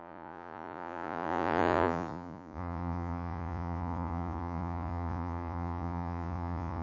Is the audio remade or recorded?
remade